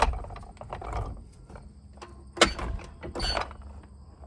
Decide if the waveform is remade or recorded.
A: recorded